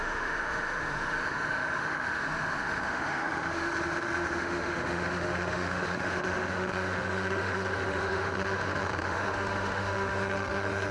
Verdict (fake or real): fake